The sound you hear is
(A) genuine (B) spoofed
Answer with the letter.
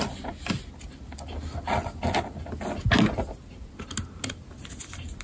A